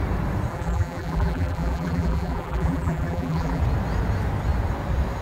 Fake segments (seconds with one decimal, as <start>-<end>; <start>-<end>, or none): 0.5-3.6